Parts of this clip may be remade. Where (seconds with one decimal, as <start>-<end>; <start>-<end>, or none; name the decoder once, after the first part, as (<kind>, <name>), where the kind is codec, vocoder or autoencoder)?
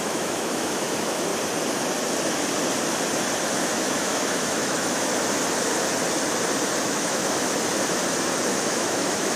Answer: 0.0-1.3 (autoencoder, DAC-VAE); 3.6-5.1; 6.8-7.2; 8.5-9.4